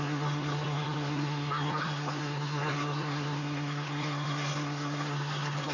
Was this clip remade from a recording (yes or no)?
yes